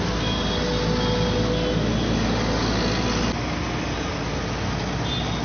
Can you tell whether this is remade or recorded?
recorded